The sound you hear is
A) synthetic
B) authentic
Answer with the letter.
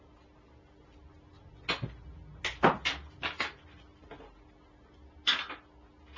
B